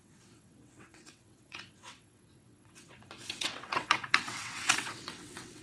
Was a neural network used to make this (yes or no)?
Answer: yes